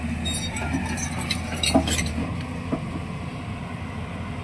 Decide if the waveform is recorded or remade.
recorded